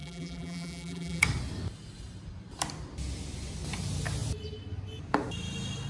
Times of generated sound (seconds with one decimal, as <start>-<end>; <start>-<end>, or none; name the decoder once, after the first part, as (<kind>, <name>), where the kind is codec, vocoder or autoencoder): 0.0-1.2 (vocoder, BigVGAN v2)